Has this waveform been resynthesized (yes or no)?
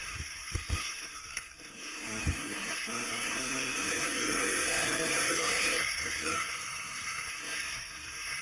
yes